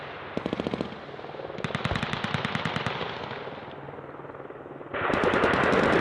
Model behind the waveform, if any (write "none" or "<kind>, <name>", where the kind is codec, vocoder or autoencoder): none